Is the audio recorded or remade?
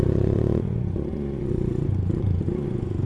remade